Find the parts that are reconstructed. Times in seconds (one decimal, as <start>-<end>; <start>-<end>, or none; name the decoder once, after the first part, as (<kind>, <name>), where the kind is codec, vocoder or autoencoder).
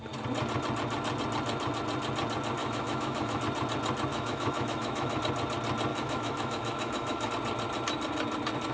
2.6-3.4 (autoencoder, DAC-VAE); 4.1-5.2; 5.9-7.3